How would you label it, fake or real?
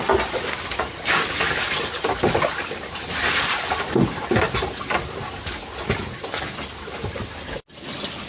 real